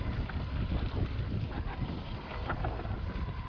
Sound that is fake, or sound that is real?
real